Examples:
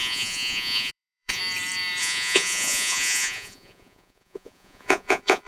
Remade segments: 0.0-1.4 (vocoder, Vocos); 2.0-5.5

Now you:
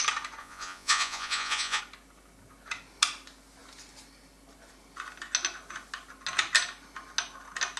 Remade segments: 0.4-1.8 (vocoder, Vocos)

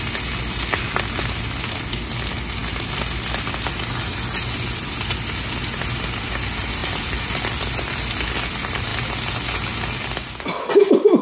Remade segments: none

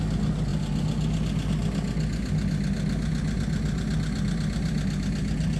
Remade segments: none

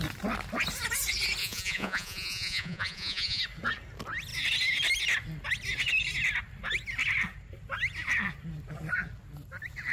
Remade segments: 1.4-3.4 (vocoder, Vocos)

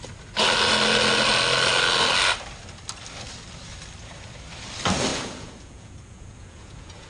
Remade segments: 5.1-7.1 (vocoder, Vocos)